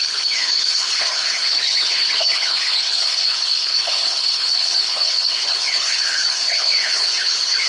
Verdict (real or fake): fake